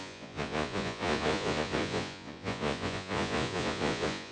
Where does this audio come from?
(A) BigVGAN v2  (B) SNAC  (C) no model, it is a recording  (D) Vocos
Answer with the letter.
D